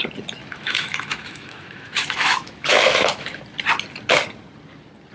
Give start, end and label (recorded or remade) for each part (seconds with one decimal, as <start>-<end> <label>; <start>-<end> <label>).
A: 0.0-0.4 recorded; 0.4-3.4 remade; 3.4-5.1 recorded